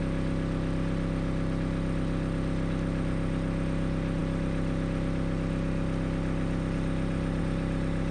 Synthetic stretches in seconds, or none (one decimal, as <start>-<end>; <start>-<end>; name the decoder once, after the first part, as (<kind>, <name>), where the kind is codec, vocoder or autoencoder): none